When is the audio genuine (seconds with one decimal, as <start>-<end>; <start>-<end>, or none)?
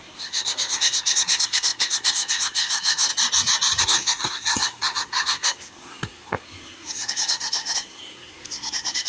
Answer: 3.1-3.8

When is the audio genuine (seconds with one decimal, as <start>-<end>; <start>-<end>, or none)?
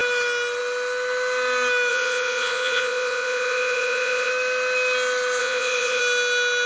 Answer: 0.0-1.9; 4.3-5.4; 6.0-6.7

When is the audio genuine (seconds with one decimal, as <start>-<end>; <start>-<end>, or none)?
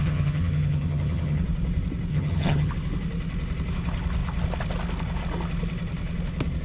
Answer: 1.4-2.1; 2.7-6.6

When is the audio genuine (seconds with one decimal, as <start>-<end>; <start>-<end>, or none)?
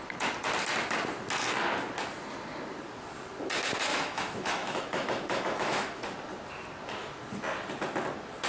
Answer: 0.0-3.9; 6.0-8.5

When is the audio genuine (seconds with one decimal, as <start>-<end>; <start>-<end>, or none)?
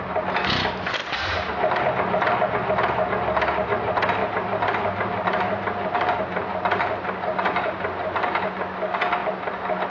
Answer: 0.0-1.0; 1.8-4.2; 8.5-9.9